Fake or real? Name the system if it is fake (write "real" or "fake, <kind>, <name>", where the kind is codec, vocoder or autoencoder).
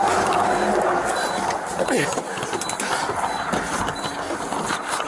real